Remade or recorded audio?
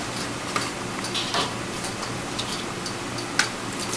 recorded